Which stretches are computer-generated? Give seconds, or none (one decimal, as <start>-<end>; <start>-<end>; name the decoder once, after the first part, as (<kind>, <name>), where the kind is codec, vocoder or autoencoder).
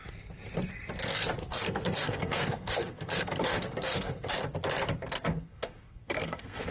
1.4-4.3 (codec, SNAC); 5.3-6.7